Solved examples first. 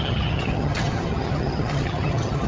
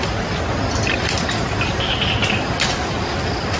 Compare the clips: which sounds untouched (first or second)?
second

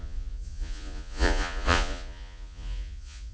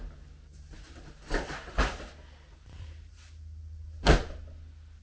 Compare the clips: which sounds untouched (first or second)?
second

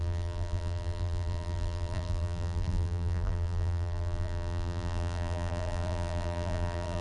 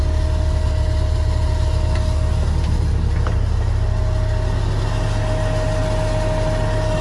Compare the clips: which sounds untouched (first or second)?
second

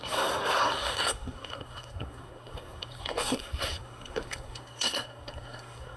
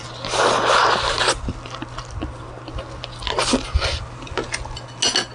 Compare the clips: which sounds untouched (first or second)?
second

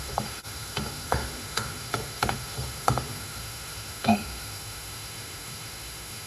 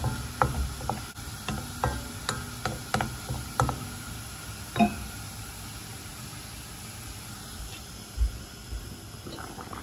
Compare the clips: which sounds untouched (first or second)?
second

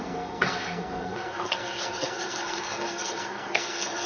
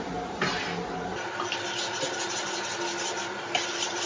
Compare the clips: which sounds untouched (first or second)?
second